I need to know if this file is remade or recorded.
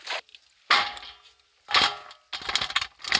recorded